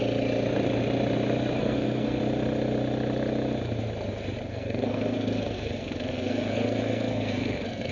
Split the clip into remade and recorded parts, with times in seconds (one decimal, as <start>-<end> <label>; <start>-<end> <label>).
0.0-1.6 recorded; 1.6-2.2 remade; 2.2-4.5 recorded; 4.5-7.9 remade